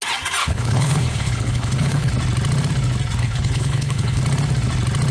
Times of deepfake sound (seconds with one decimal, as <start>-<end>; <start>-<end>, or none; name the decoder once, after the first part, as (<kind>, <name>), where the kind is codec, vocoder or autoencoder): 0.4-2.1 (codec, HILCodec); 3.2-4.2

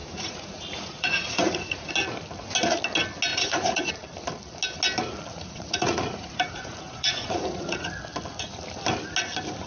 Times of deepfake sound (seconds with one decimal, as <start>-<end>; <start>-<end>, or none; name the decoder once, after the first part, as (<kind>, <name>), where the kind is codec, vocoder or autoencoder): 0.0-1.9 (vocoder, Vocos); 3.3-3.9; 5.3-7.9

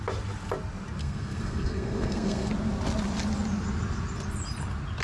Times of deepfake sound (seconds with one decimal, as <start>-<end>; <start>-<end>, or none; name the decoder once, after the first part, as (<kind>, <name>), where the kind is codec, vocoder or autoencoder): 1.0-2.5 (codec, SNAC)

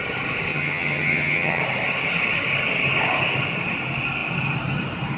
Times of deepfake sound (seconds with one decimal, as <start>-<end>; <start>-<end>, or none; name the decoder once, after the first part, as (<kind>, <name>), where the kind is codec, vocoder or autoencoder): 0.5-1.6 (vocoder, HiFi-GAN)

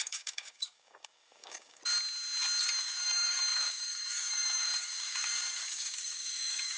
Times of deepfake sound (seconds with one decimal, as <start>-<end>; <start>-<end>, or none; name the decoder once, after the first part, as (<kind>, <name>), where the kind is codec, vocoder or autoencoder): 0.0-1.8 (codec, DAC); 2.8-6.8

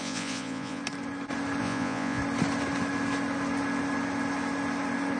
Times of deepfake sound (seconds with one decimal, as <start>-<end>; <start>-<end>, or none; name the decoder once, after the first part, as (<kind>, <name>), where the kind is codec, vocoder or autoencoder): 0.0-0.8 (vocoder, Vocos); 1.6-2.2

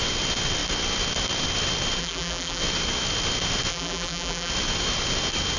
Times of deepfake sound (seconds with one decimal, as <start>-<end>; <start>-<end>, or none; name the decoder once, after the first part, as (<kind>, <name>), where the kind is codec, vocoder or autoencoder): 2.0-2.6 (vocoder, BigVGAN v2); 3.7-4.5